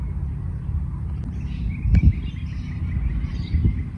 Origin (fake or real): real